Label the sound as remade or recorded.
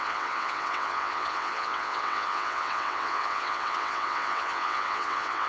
remade